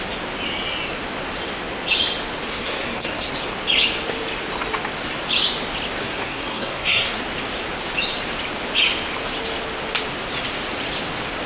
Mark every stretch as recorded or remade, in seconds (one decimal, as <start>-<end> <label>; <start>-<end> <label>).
0.0-2.5 recorded; 2.5-3.3 remade; 3.3-6.0 recorded; 6.0-7.2 remade; 7.2-11.5 recorded